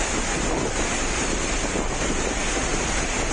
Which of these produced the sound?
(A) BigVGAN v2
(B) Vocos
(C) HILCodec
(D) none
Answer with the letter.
D